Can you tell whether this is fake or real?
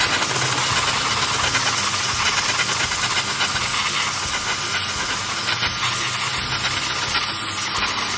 real